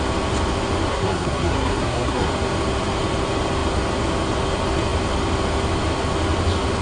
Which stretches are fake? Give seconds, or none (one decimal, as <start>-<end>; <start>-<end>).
0.9-2.3